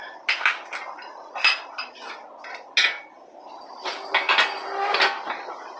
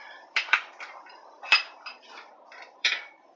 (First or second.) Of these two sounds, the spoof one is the second